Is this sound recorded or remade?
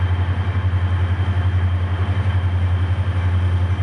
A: recorded